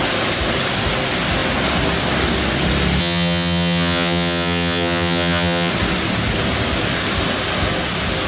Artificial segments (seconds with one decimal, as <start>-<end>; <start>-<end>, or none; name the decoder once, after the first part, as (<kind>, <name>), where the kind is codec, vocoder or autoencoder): 3.0-5.7 (vocoder, HiFi-GAN)